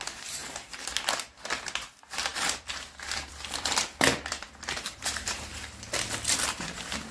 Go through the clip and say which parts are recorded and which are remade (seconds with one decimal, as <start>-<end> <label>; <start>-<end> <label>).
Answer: 0.0-2.3 recorded; 2.3-5.5 remade; 5.5-7.1 recorded

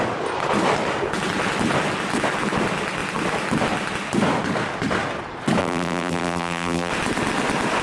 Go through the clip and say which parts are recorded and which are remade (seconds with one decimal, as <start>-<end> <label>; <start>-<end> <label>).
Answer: 0.0-5.6 recorded; 5.6-6.9 remade; 6.9-7.8 recorded

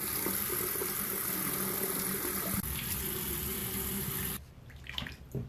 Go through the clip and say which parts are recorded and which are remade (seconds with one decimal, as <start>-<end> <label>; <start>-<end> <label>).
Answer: 0.0-5.5 recorded

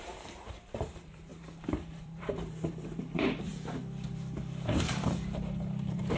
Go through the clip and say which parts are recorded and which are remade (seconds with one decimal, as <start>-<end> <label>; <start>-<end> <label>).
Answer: 0.0-6.2 remade

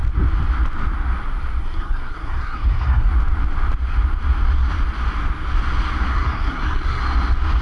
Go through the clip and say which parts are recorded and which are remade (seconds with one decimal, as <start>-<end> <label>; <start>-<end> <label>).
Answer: 0.0-1.6 recorded; 1.6-3.1 remade; 3.1-6.1 recorded; 6.1-7.0 remade; 7.0-7.6 recorded